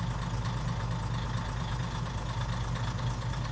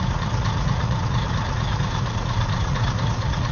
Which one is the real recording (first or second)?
first